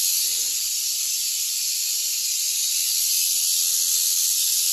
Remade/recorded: recorded